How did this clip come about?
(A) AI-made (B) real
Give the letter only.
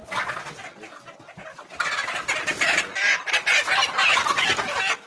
B